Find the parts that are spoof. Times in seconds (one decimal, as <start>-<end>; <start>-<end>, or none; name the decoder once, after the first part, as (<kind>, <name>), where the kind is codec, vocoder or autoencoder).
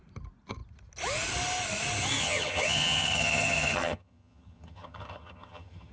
2.2-5.9 (vocoder, HiFi-GAN)